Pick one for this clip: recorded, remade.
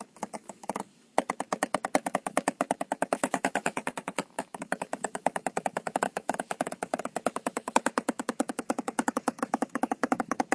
remade